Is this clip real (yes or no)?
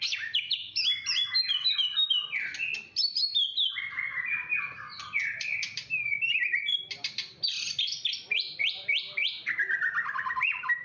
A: no